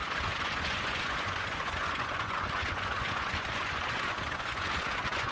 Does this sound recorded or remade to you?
remade